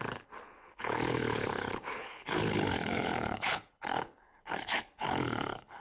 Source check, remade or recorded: remade